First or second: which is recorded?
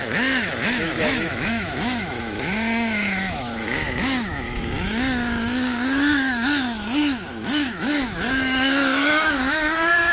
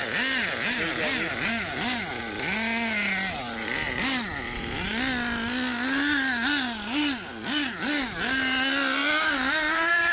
second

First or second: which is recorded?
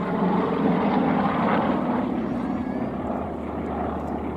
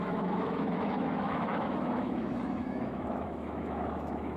first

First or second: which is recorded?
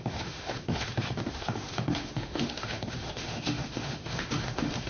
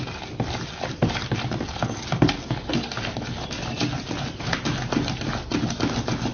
second